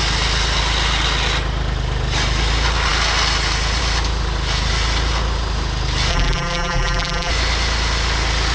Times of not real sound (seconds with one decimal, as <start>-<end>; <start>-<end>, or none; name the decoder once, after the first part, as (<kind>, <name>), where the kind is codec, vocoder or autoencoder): 6.1-7.3 (vocoder, BigVGAN v2)